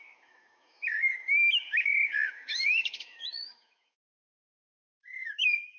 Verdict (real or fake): fake